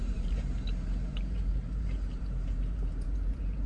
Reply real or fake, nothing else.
fake